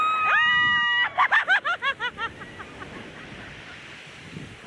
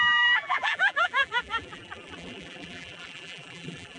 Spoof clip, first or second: second